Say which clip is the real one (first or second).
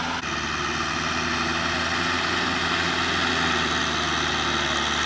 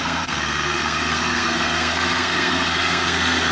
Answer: first